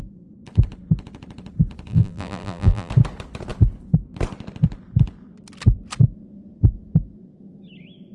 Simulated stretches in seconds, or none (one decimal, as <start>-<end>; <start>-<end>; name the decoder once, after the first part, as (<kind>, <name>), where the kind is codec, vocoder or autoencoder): 1.9-2.9 (vocoder, BigVGAN v2)